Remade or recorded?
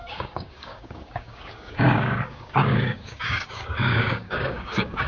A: remade